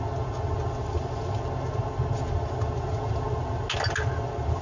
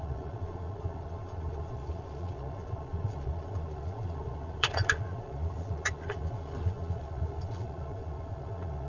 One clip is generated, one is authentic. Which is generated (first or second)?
second